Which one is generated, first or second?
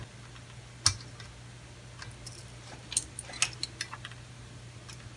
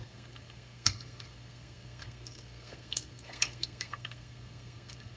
second